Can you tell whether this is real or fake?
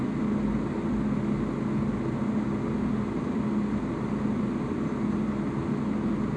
real